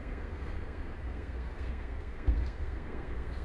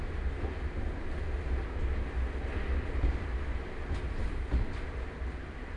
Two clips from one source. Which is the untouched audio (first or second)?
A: second